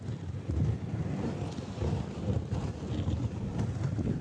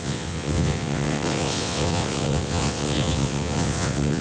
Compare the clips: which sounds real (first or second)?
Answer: first